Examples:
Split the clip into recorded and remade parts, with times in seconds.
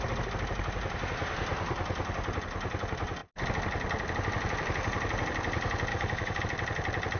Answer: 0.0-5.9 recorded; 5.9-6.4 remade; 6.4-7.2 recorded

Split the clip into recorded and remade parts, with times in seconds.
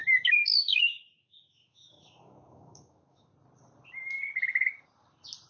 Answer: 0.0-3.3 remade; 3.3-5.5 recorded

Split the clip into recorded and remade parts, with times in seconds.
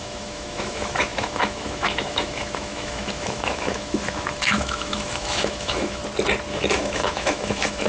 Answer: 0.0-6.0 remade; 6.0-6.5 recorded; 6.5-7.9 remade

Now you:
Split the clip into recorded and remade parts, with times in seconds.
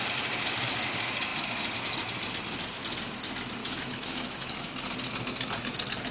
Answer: 0.0-3.6 recorded; 3.6-4.7 remade; 4.7-6.1 recorded